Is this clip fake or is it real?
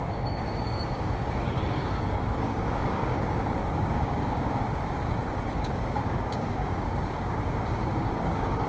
fake